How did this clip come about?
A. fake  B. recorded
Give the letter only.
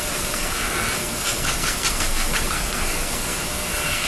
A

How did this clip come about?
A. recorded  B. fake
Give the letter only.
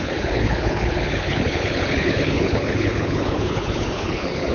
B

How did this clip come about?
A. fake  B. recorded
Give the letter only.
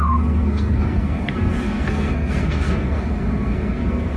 A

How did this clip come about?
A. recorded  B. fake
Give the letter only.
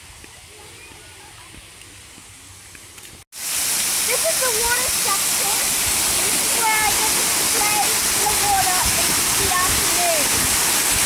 A